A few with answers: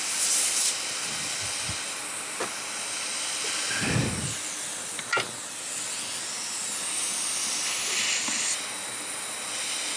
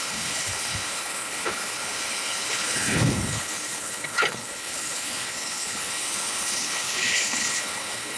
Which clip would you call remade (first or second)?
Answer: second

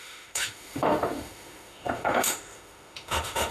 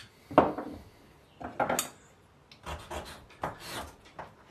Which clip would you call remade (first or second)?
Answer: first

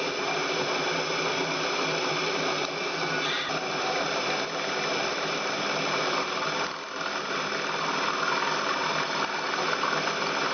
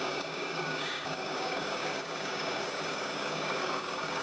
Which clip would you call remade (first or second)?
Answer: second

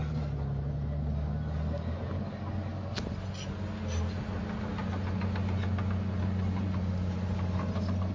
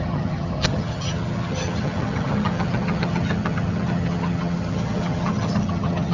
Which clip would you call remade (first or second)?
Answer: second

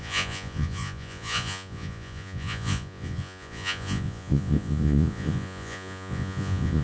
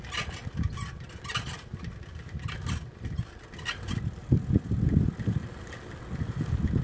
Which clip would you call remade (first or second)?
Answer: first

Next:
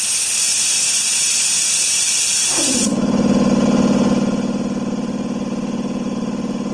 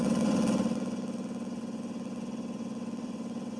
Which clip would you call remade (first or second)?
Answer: second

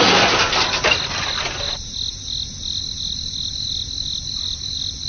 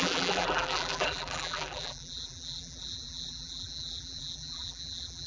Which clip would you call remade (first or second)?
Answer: second